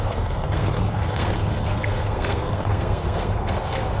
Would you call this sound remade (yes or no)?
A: yes